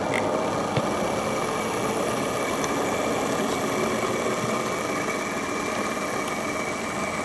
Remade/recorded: recorded